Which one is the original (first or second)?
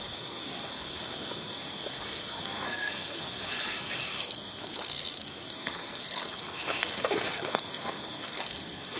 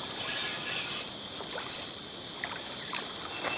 second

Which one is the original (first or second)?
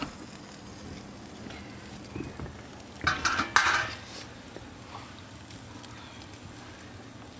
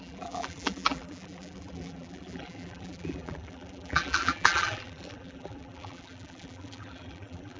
first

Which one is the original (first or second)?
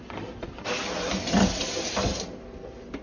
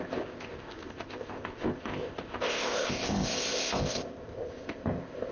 first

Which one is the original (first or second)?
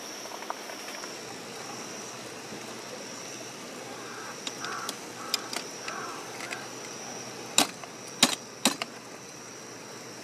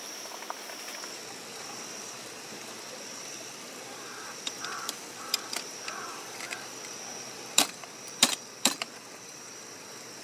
first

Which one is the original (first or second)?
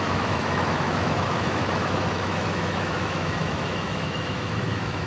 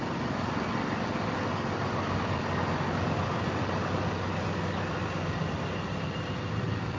second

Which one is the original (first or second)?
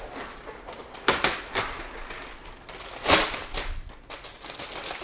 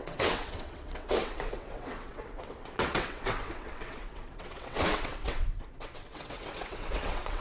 first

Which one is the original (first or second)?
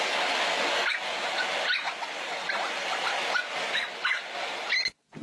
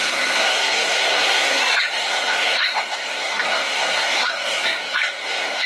first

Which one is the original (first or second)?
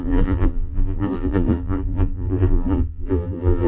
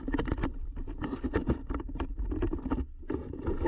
second